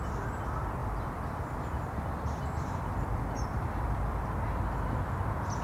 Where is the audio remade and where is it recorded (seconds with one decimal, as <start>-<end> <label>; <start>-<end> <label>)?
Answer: 0.0-0.8 recorded; 0.8-4.2 remade; 4.2-5.6 recorded